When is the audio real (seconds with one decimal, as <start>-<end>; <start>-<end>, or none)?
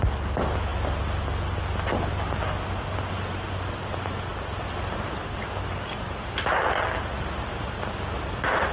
0.0-8.7